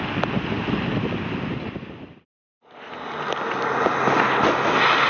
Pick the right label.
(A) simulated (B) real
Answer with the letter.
B